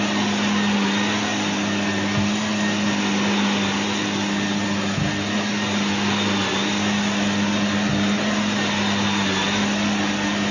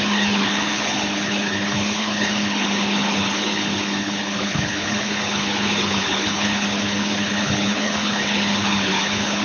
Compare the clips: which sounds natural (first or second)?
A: first